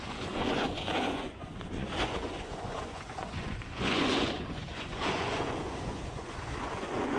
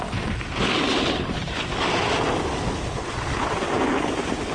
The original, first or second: second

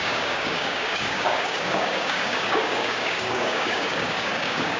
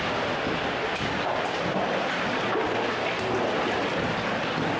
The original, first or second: second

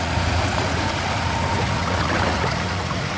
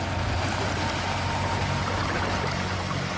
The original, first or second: second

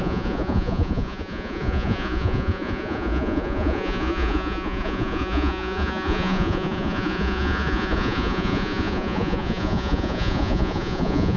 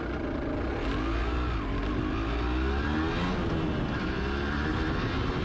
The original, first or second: second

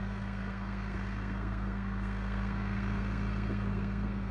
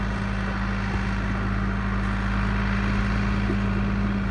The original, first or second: second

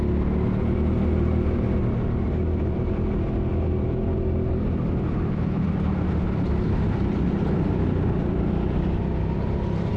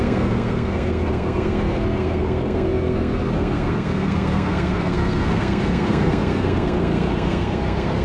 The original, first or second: first